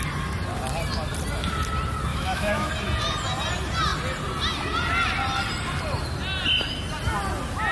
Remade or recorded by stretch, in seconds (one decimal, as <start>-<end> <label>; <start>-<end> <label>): 0.0-2.1 recorded; 2.1-2.7 remade; 2.7-7.7 recorded